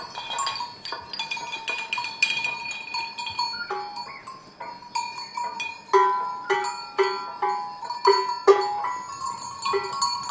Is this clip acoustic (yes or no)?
yes